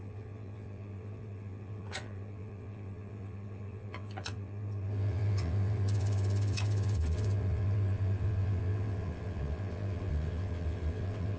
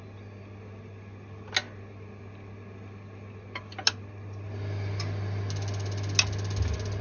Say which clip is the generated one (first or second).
first